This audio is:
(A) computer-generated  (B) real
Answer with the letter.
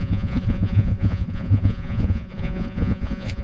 A